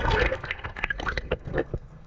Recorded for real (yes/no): no